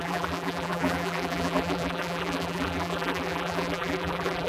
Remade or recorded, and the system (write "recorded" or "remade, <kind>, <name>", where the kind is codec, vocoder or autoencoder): remade, vocoder, BigVGAN v2